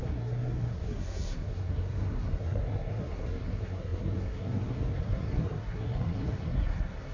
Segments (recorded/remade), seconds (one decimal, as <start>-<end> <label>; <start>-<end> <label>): 0.0-7.1 remade